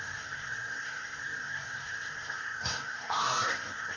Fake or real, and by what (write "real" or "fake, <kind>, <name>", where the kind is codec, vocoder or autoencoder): fake, codec, SNAC